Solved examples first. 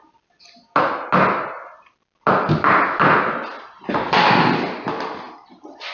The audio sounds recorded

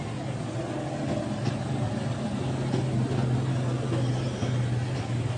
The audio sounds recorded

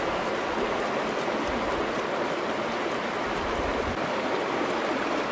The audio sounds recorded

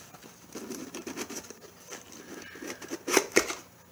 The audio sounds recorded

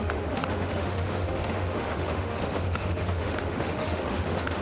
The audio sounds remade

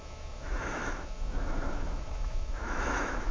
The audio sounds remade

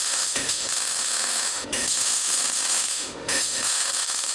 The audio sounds remade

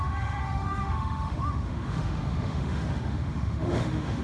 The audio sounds remade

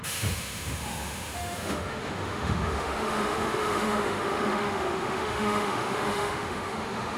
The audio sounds remade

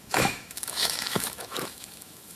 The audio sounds remade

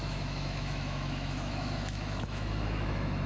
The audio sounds remade